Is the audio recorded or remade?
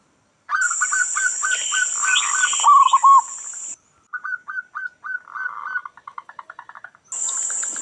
recorded